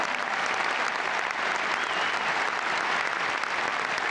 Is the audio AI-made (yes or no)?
no